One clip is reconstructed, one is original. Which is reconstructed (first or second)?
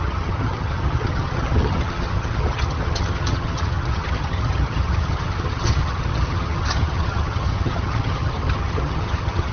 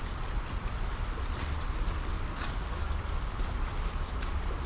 first